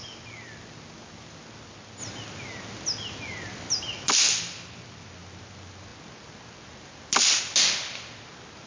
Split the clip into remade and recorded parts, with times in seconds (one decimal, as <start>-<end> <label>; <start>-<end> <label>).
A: 0.0-8.7 recorded

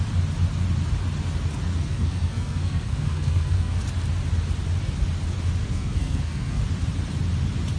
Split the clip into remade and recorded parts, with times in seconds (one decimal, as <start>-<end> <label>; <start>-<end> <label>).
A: 0.0-1.7 recorded; 1.7-3.8 remade; 3.8-5.6 recorded; 5.6-6.6 remade; 6.6-7.8 recorded

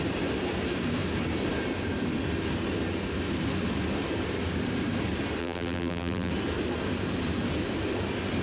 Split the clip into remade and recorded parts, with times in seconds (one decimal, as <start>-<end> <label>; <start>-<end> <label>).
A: 0.0-5.4 recorded; 5.4-6.3 remade; 6.3-8.4 recorded

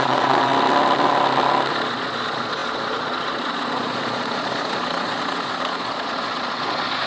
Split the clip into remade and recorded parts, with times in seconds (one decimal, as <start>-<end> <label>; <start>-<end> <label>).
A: 0.0-0.5 remade; 0.5-1.7 recorded; 1.7-7.1 remade

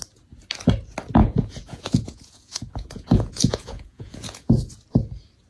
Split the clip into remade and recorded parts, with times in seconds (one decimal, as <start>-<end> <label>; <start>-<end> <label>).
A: 0.0-1.2 recorded; 1.2-4.5 remade; 4.5-5.5 recorded

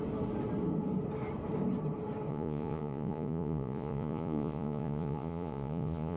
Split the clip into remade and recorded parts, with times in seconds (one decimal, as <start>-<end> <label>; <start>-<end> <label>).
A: 0.0-2.3 recorded; 2.3-6.2 remade